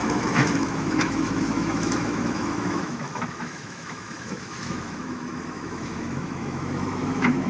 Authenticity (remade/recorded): remade